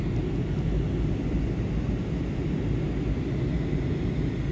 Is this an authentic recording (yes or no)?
yes